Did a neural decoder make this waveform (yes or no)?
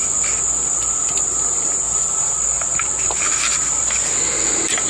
no